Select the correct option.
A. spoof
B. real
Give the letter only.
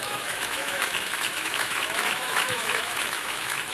A